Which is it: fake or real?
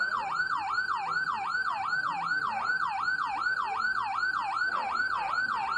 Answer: real